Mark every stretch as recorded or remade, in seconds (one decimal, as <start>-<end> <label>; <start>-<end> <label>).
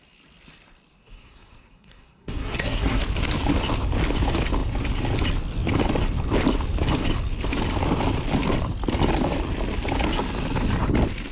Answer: 0.0-1.0 recorded; 1.0-3.0 remade; 3.0-11.3 recorded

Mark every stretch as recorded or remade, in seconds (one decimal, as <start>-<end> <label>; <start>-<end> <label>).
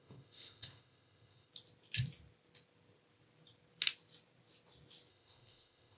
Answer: 0.0-1.5 remade; 1.5-5.1 recorded; 5.1-6.0 remade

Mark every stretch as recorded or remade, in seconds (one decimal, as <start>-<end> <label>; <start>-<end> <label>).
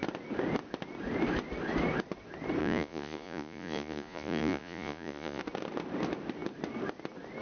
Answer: 0.0-2.6 recorded; 2.6-5.4 remade; 5.4-7.4 recorded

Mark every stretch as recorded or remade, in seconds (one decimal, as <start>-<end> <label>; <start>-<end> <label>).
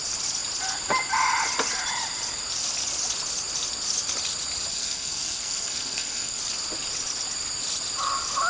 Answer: 0.0-4.7 recorded; 4.7-6.4 remade; 6.4-8.5 recorded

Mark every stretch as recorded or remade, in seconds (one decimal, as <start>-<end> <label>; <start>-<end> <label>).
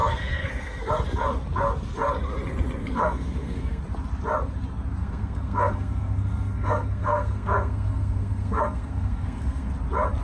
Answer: 0.0-0.9 remade; 0.9-2.8 recorded; 2.8-3.8 remade; 3.8-5.0 recorded; 5.0-9.7 remade; 9.7-10.2 recorded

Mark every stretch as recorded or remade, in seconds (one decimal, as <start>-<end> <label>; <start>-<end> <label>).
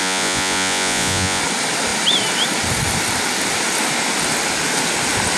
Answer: 0.0-1.4 remade; 1.4-5.4 recorded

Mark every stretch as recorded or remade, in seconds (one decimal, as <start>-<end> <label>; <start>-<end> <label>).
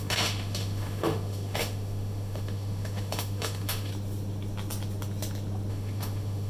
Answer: 0.0-3.9 remade; 3.9-5.7 recorded; 5.7-6.5 remade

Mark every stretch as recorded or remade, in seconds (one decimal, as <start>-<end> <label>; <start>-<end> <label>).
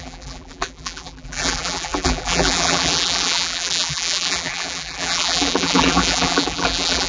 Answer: 0.0-7.1 remade